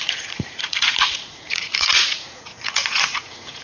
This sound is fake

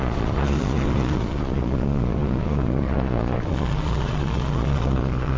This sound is fake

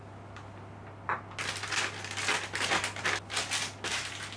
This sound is real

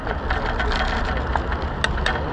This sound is real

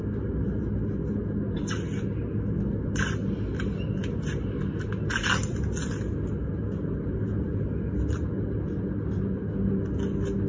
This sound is real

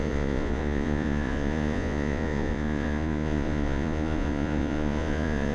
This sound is fake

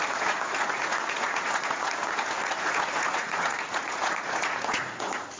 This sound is fake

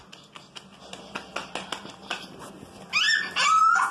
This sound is real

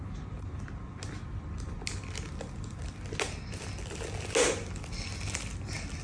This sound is real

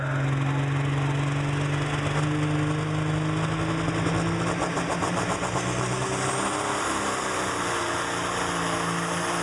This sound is real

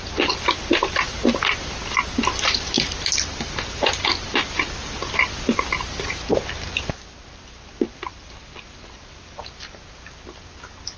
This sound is real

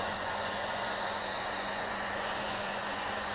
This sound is fake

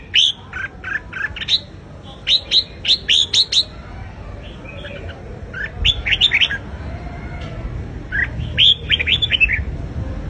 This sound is real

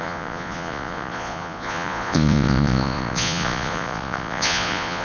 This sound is fake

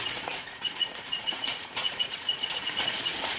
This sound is fake